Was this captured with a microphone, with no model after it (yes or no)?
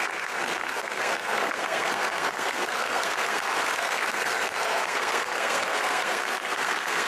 no